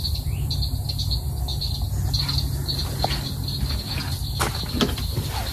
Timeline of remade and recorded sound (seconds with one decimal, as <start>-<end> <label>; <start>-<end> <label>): 0.0-5.5 recorded